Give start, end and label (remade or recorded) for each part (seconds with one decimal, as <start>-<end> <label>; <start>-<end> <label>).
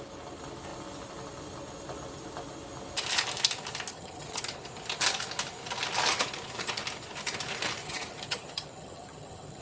0.0-3.9 recorded; 3.9-4.4 remade; 4.4-7.8 recorded; 7.8-9.6 remade